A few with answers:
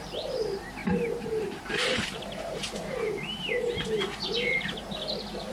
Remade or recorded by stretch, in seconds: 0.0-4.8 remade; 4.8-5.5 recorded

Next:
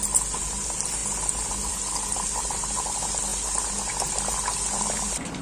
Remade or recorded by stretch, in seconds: 0.0-5.4 recorded

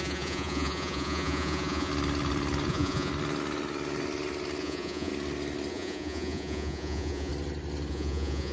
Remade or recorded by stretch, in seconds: 0.0-1.9 remade; 1.9-2.7 recorded; 2.7-3.1 remade; 3.1-4.6 recorded; 4.6-5.1 remade; 5.1-5.7 recorded; 5.7-7.3 remade; 7.3-7.9 recorded; 7.9-8.5 remade

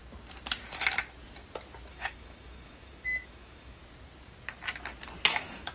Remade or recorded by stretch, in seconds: 0.0-1.9 recorded; 1.9-3.8 remade; 3.8-5.3 recorded; 5.3-5.7 remade

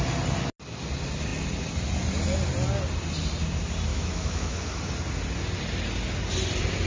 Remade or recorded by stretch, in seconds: 0.0-3.9 recorded; 3.9-4.8 remade; 4.8-6.9 recorded

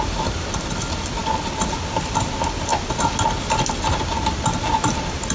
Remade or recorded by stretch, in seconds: 0.0-5.3 recorded